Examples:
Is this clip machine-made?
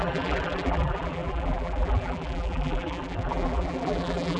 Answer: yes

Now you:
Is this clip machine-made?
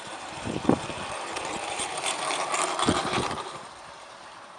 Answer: yes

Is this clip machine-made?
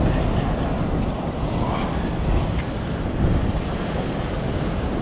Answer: no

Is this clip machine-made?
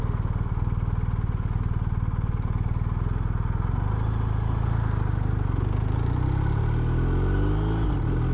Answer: no